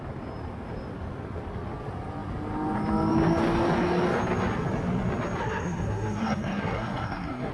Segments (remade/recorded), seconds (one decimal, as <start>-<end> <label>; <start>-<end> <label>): 0.0-5.4 recorded; 5.4-7.5 remade